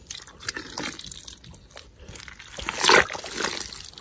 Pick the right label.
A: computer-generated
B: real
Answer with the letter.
B